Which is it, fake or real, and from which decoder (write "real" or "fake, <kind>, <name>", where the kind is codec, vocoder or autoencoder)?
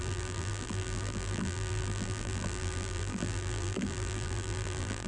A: fake, vocoder, BigVGAN v2